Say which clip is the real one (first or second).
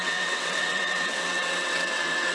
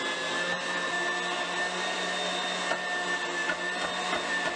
second